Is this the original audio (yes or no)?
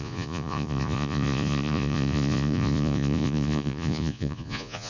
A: no